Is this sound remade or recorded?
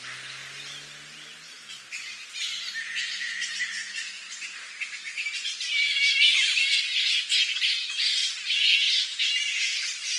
recorded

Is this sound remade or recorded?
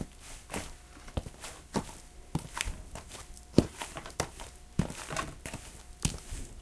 recorded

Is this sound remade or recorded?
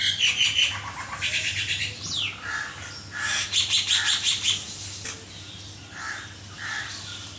recorded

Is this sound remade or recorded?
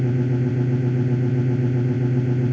recorded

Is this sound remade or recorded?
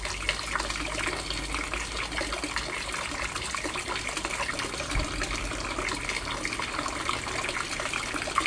recorded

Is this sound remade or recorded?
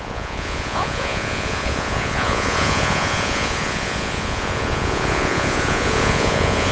remade